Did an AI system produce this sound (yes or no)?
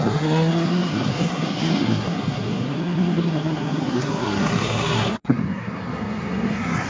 yes